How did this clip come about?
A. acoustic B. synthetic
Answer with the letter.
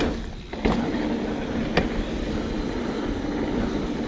A